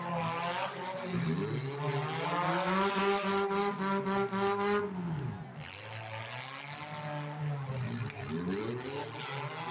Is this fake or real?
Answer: real